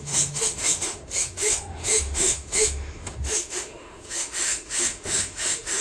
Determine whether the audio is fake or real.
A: fake